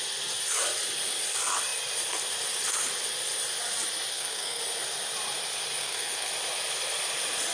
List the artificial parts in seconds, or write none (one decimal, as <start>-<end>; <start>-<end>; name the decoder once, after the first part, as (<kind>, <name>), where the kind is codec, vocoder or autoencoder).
4.1-4.6 (codec, SNAC); 5.8-6.3